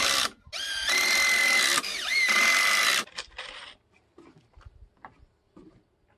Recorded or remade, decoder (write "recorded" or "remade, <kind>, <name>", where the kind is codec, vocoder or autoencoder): recorded